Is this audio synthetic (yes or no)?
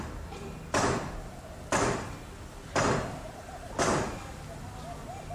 no